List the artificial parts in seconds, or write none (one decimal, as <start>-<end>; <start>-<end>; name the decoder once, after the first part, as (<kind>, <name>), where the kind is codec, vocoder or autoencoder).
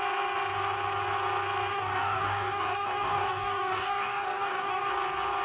1.7-4.9 (codec, DAC)